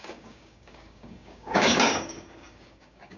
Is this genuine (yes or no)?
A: no